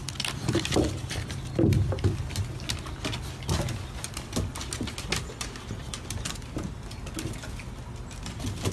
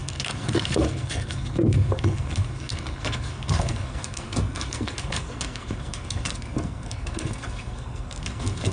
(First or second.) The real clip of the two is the first